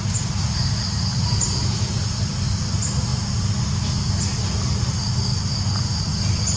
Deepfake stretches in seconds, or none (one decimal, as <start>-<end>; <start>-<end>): none